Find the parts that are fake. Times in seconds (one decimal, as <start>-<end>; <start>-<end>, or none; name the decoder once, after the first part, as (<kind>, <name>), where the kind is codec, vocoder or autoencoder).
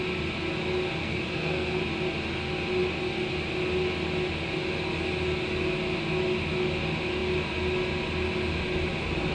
1.0-1.8 (codec, SNAC)